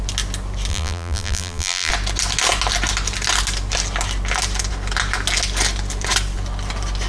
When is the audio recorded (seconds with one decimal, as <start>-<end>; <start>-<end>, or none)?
0.0-0.7; 1.9-7.1